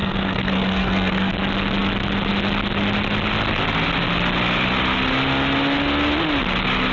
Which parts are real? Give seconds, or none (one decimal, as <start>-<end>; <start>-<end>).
1.3-6.9